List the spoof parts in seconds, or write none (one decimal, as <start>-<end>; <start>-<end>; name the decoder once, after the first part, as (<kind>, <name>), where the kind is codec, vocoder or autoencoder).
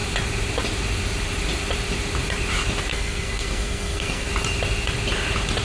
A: 2.9-4.3 (codec, SNAC)